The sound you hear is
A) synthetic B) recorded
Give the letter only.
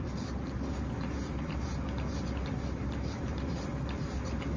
B